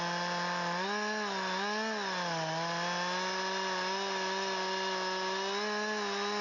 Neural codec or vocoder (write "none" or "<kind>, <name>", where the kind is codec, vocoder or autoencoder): none